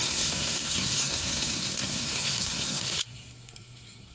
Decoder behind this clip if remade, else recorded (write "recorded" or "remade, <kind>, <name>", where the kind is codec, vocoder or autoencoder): remade, codec, SNAC